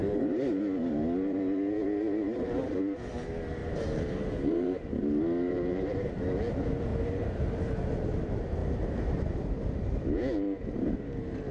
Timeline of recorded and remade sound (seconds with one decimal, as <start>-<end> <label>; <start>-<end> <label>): 0.0-0.6 remade; 0.6-3.6 recorded; 3.6-6.2 remade; 6.2-6.9 recorded; 6.9-7.7 remade; 7.7-8.6 recorded; 8.6-11.5 remade